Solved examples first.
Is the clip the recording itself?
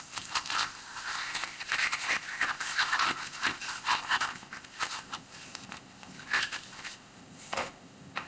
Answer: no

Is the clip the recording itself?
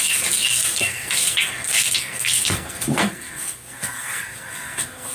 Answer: no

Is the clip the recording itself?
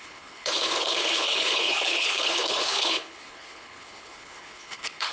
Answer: no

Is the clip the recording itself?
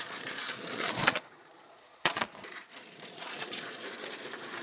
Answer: no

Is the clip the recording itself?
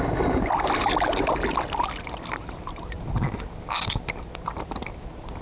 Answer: yes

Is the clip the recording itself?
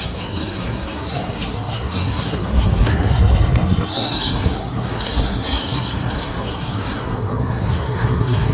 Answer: no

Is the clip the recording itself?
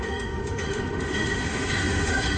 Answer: no